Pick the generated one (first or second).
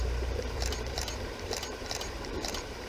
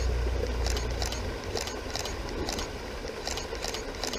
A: first